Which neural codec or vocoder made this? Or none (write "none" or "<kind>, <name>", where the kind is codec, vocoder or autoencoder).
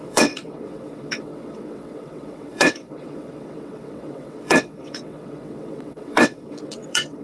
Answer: vocoder, WaveNeXt